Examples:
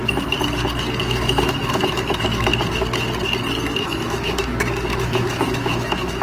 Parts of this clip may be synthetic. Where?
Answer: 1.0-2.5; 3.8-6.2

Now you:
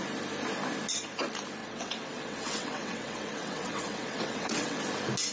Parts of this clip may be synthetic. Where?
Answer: 1.6-4.8

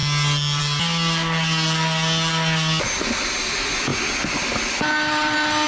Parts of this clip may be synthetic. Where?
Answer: none

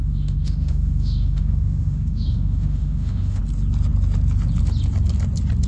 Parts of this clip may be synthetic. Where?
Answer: 0.0-3.4

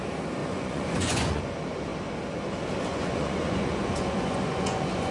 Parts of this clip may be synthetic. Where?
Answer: 0.4-1.4; 2.9-5.1

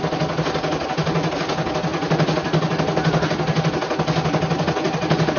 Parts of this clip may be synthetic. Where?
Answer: none